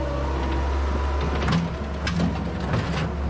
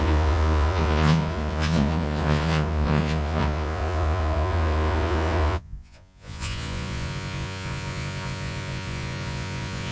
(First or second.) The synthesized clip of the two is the second